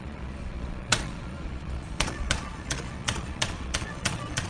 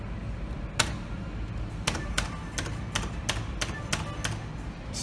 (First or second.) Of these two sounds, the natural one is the second